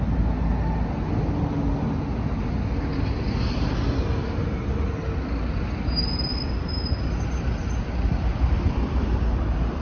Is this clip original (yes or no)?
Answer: yes